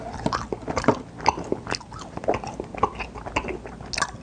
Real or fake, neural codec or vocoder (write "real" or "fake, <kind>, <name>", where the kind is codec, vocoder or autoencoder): real